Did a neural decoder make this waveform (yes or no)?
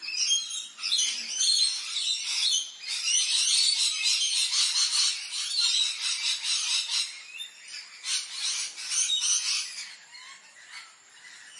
no